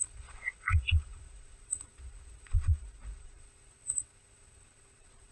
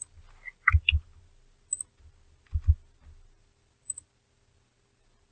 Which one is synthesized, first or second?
first